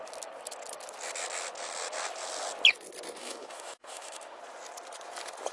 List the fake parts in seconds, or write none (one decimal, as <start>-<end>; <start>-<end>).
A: 3.2-4.4